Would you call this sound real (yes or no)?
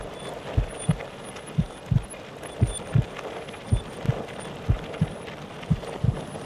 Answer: yes